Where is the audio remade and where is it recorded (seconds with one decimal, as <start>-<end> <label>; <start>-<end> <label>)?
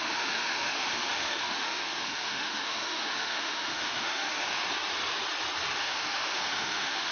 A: 0.0-4.6 remade; 4.6-5.8 recorded; 5.8-7.1 remade